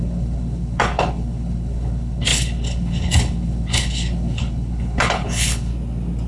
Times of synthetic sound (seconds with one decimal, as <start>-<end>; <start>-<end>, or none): 0.0-5.7